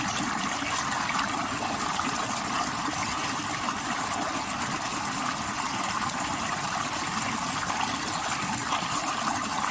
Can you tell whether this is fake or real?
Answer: real